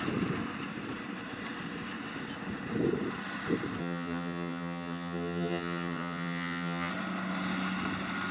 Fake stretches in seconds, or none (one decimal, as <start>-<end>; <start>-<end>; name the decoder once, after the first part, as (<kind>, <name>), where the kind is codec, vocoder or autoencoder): 3.8-6.9 (vocoder, HiFi-GAN)